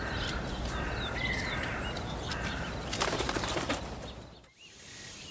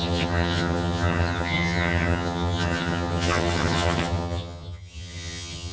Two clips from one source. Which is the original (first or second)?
first